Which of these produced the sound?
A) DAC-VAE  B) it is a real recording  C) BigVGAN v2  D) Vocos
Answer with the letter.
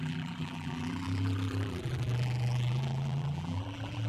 C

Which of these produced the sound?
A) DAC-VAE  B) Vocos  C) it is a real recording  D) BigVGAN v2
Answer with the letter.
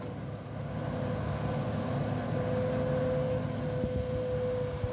C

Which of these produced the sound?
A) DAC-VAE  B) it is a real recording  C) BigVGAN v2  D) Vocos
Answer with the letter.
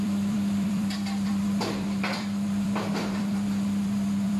C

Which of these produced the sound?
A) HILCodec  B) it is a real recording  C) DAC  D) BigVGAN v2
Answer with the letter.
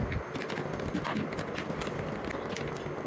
B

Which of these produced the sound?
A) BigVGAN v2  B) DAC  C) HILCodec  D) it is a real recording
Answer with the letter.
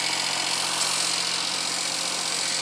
D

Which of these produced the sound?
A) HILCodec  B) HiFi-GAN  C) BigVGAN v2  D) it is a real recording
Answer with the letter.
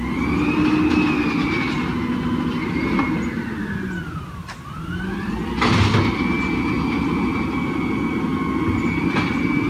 D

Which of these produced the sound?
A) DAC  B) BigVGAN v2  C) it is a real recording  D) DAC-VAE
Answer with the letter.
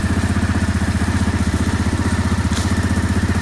C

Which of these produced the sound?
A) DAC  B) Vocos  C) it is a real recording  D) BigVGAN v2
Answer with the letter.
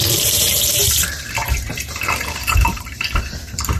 D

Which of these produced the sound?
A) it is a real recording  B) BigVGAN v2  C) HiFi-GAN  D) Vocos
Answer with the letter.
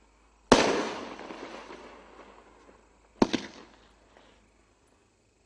A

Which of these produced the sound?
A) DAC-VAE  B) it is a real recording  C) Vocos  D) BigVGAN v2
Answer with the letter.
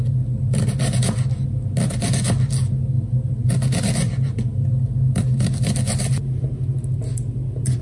B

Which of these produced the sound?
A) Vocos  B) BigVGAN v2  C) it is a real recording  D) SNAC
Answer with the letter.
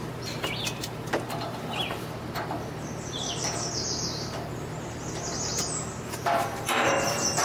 B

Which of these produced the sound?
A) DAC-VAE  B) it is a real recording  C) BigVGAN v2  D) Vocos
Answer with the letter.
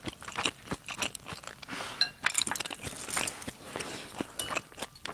B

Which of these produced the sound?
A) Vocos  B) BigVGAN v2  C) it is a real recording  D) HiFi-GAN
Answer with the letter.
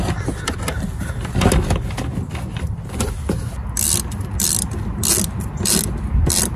C